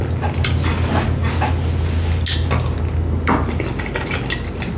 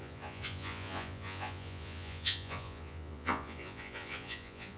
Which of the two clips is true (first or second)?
first